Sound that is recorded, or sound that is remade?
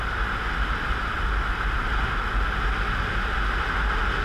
recorded